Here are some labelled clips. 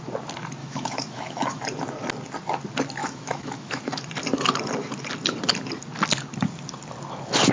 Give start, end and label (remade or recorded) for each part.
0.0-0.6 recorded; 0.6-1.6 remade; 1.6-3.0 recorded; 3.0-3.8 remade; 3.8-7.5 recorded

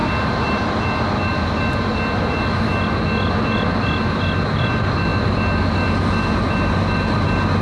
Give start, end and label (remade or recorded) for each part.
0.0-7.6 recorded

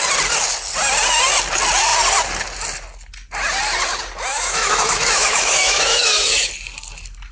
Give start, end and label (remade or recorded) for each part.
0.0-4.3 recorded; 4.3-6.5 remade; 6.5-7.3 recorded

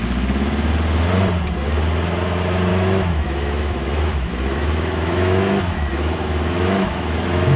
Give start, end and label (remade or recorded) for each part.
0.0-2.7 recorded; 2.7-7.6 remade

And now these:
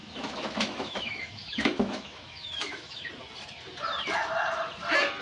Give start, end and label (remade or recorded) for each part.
0.0-3.1 remade; 3.1-5.2 recorded

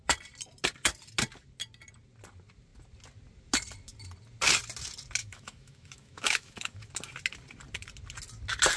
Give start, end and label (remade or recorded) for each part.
0.0-5.2 recorded; 5.2-6.9 remade; 6.9-8.8 recorded

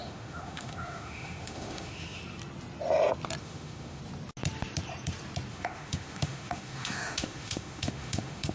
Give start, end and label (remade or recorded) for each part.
0.0-2.2 remade; 2.2-3.4 recorded; 3.4-4.0 remade; 4.0-5.5 recorded; 5.5-8.5 remade

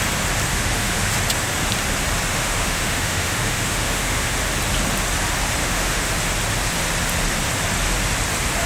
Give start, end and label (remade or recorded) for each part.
0.0-0.5 recorded; 0.5-1.1 remade; 1.1-2.3 recorded; 2.3-4.3 remade; 4.3-5.6 recorded; 5.6-6.1 remade; 6.1-8.7 recorded